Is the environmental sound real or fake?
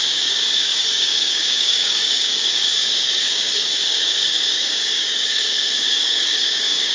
fake